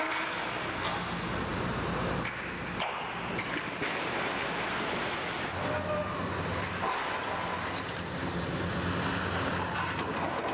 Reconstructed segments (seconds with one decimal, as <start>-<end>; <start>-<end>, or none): none